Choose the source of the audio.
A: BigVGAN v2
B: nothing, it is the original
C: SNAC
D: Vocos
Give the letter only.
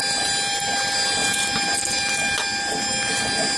B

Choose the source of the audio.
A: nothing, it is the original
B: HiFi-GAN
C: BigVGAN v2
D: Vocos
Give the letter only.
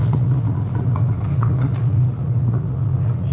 D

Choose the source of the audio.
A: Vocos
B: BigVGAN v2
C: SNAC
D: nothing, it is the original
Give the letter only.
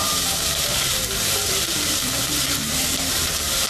B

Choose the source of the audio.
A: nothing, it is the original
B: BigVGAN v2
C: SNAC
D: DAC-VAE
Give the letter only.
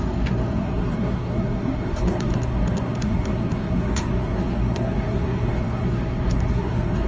C